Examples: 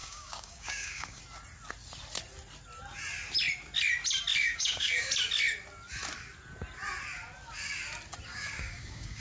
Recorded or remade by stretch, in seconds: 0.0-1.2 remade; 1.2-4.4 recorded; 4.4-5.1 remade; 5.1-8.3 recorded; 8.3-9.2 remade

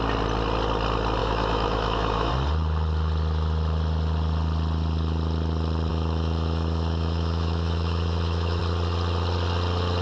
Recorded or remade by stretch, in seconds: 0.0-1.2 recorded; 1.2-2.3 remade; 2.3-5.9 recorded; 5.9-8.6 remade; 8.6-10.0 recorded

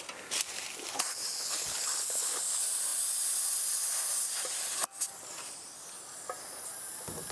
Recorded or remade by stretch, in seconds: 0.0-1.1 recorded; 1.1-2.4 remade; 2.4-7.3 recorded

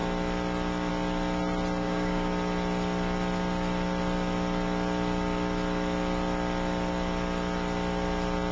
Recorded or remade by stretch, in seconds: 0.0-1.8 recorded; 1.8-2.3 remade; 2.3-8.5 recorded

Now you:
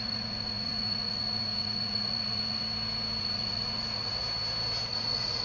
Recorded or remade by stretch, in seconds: 0.0-2.6 remade; 2.6-3.2 recorded; 3.2-4.2 remade; 4.2-4.9 recorded; 4.9-5.4 remade

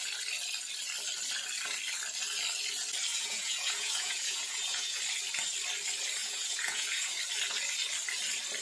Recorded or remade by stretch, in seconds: 0.0-3.1 recorded; 3.1-5.0 remade; 5.0-6.2 recorded; 6.2-7.2 remade; 7.2-8.6 recorded

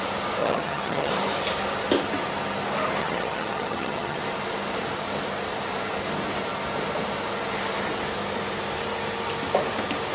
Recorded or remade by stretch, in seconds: 0.0-0.4 recorded; 0.4-1.1 remade; 1.1-3.0 recorded; 3.0-4.2 remade; 4.2-10.1 recorded

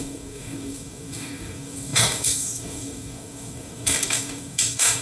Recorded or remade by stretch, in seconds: 0.0-5.0 remade